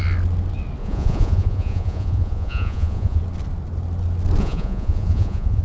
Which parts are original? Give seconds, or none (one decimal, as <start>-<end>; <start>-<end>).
0.0-0.8; 3.2-4.4